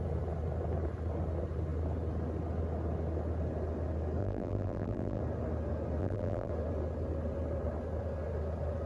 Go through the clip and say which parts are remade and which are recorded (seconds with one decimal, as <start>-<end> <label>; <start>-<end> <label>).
0.0-4.2 recorded; 4.2-5.2 remade; 5.2-6.0 recorded; 6.0-6.5 remade; 6.5-8.9 recorded